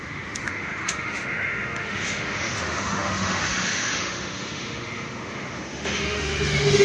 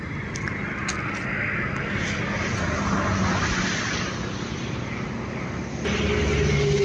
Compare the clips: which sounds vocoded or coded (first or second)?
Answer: first